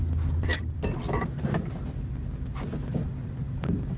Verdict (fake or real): real